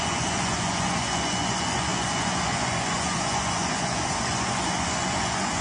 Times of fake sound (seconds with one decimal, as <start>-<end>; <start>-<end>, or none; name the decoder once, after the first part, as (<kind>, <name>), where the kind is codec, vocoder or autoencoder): 0.0-5.6 (vocoder, Vocos)